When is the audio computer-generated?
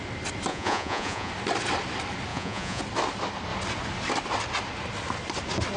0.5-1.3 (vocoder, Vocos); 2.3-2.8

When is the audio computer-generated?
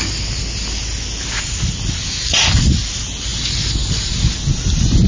none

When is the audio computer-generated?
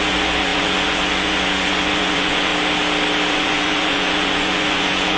0.0-2.5 (vocoder, Vocos); 3.3-5.2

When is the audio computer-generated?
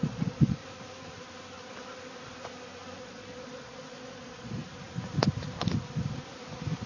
0.0-0.6 (vocoder, Vocos); 3.0-4.6